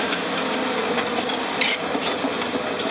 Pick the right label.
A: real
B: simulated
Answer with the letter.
A